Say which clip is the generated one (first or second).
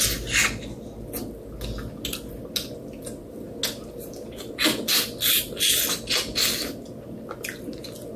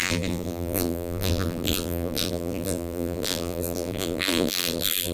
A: second